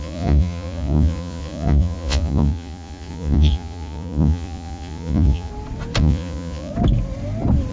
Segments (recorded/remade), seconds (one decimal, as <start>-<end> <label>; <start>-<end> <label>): 0.0-5.5 remade; 5.5-6.0 recorded; 6.0-6.7 remade; 6.7-7.7 recorded